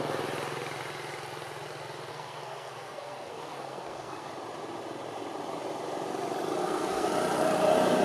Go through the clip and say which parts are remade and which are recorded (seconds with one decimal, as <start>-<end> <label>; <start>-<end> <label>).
0.0-2.1 recorded; 2.1-4.3 remade; 4.3-6.6 recorded; 6.6-7.1 remade; 7.1-8.0 recorded